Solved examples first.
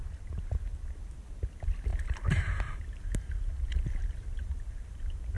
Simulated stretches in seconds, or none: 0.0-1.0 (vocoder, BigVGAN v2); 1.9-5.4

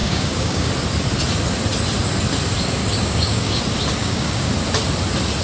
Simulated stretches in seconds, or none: 0.0-0.7 (codec, DAC); 2.8-3.6; 4.0-4.5